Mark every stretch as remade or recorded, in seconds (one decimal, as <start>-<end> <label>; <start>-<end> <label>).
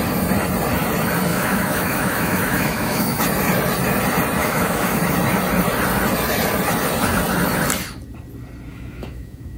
0.0-1.3 recorded; 1.3-3.2 remade; 3.2-4.4 recorded; 4.4-5.0 remade; 5.0-8.7 recorded; 8.7-9.6 remade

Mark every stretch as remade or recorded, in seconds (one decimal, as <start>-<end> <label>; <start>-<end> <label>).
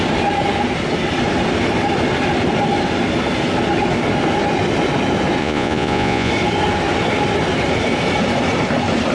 0.0-5.4 recorded; 5.4-6.3 remade; 6.3-9.1 recorded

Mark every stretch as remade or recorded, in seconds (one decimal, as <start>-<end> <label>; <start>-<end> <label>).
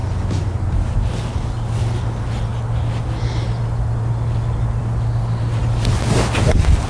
0.0-5.6 recorded; 5.6-6.9 remade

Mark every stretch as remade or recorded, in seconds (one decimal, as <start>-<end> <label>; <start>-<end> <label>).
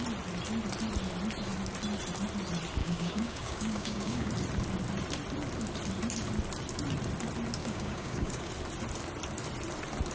0.0-2.8 recorded; 2.8-4.3 remade; 4.3-7.6 recorded; 7.6-8.5 remade; 8.5-10.1 recorded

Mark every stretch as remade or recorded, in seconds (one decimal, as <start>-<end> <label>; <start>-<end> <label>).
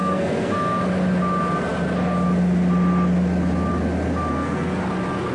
0.0-0.8 remade; 0.8-4.3 recorded; 4.3-4.8 remade; 4.8-5.3 recorded